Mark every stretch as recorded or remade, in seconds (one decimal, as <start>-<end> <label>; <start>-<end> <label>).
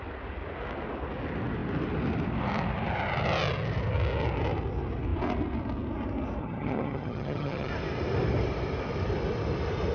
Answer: 0.0-6.4 recorded; 6.4-7.7 remade; 7.7-9.9 recorded